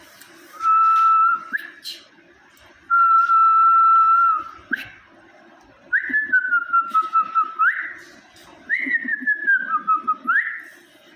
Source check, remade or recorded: recorded